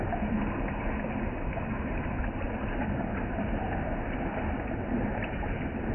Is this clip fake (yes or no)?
no